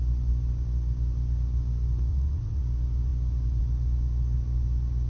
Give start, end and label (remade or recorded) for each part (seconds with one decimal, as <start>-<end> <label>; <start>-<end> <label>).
0.0-2.1 recorded; 2.1-2.6 remade; 2.6-5.1 recorded